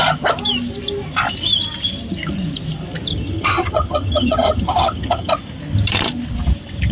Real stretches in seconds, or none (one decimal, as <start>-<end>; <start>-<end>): 0.0-3.1; 5.3-6.9